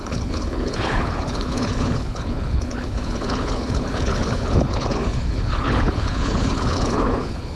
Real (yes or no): no